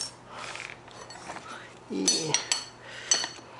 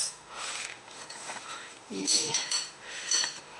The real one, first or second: first